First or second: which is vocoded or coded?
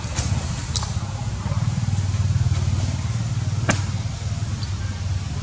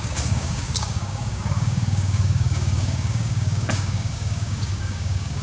second